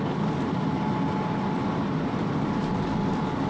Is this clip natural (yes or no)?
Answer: yes